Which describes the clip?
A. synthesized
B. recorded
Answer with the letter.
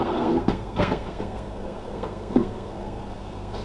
A